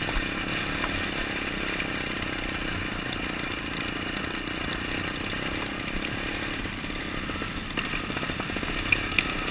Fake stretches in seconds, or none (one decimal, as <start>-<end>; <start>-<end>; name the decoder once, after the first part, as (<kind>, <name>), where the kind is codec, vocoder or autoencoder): 2.9-6.3 (vocoder, BigVGAN v2)